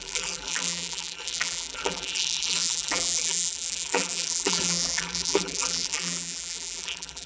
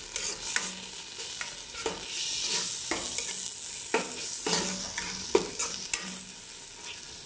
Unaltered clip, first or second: second